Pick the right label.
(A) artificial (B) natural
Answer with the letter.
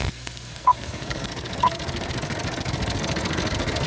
A